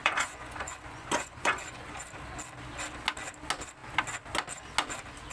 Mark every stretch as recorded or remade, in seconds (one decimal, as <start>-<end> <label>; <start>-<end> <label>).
0.0-2.0 remade; 2.0-5.3 recorded